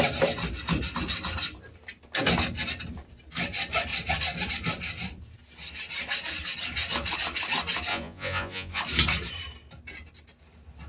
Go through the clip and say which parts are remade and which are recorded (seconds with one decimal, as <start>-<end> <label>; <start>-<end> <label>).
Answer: 0.0-7.9 recorded; 7.9-8.8 remade; 8.8-10.9 recorded